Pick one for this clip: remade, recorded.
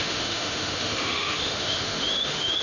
remade